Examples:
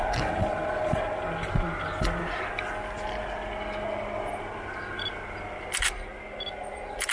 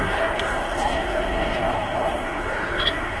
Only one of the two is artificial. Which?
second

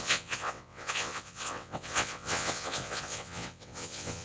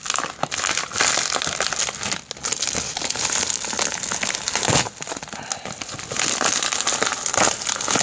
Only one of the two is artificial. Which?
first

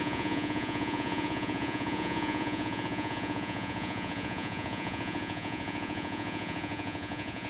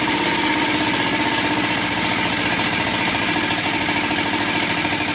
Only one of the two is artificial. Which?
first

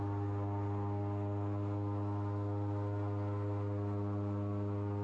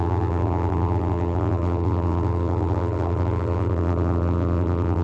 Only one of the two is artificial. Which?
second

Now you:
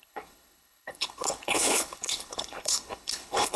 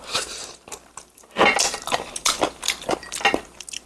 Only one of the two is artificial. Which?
first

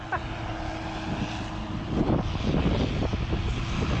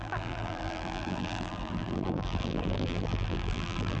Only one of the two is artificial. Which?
second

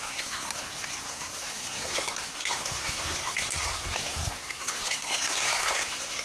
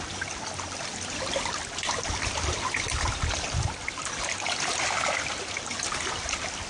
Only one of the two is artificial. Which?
first